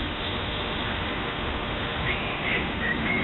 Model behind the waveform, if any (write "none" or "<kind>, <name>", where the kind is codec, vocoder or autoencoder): autoencoder, DAC-VAE